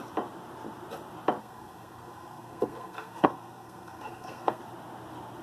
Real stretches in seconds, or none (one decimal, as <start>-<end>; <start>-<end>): 0.0-1.4; 4.6-5.4